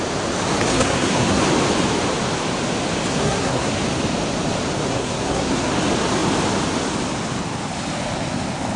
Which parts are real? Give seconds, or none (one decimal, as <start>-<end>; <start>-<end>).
0.0-0.7; 1.4-3.1; 3.7-4.9; 5.7-8.8